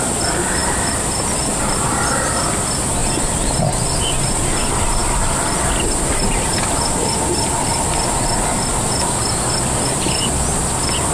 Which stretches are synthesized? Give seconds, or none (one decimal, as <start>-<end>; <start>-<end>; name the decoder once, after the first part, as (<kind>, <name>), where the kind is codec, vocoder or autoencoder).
none